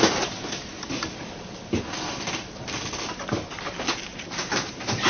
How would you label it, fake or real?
real